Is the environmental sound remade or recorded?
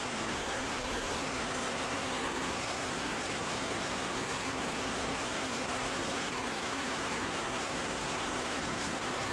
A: remade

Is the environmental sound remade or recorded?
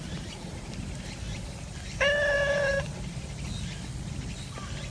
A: recorded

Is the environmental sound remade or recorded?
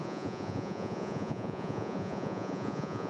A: remade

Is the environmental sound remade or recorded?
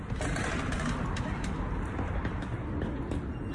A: recorded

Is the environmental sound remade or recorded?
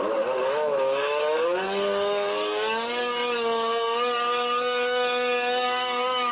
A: remade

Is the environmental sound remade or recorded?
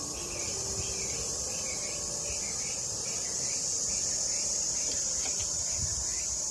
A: remade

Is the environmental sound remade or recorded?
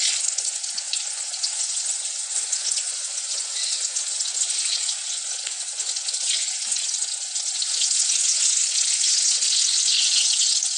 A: remade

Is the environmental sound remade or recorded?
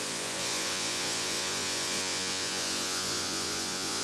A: remade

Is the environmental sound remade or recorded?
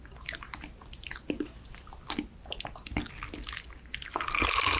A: recorded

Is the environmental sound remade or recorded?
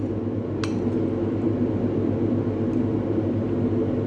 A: recorded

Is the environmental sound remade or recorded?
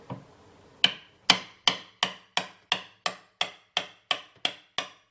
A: recorded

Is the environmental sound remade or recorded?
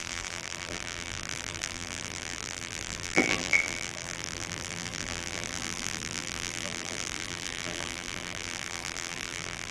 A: remade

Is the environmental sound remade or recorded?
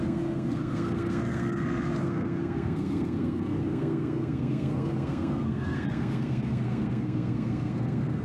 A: remade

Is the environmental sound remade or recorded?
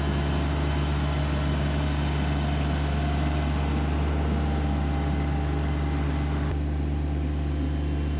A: recorded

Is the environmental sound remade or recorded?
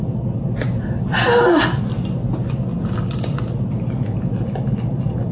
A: recorded